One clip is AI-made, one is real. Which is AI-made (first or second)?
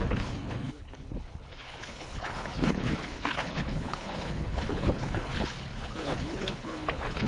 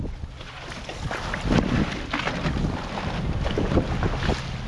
first